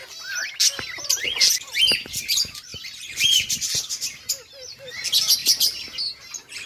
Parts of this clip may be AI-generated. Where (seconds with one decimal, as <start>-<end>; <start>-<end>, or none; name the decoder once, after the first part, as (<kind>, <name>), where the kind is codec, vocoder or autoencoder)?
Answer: 2.7-4.3 (vocoder, BigVGAN v2)